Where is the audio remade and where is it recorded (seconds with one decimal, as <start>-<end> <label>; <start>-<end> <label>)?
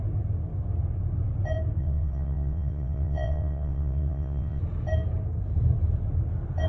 0.0-1.8 recorded; 1.8-4.6 remade; 4.6-6.7 recorded